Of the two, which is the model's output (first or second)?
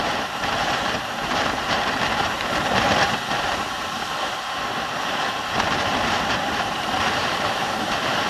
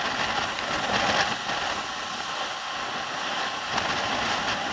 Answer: first